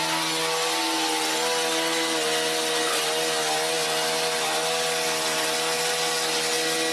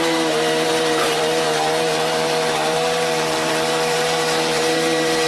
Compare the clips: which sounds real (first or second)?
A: first